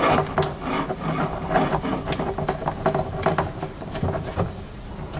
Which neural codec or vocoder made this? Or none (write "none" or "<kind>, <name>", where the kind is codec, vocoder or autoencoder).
none